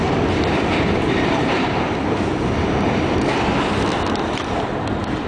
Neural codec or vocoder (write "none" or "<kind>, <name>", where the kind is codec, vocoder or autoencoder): vocoder, BigVGAN v2